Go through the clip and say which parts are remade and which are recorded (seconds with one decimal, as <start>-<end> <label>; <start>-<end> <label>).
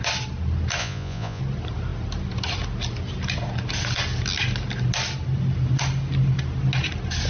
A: 0.0-0.8 recorded; 0.8-1.4 remade; 1.4-7.3 recorded